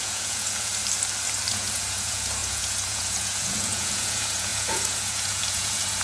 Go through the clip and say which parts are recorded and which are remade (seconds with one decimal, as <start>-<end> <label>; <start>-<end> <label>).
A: 0.0-0.7 remade; 0.7-1.5 recorded; 1.5-6.0 remade